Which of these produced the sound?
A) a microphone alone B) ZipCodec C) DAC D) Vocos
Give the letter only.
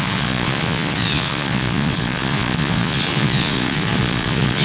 D